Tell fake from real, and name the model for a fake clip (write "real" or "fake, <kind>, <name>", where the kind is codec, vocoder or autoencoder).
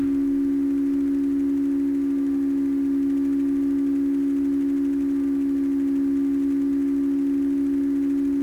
real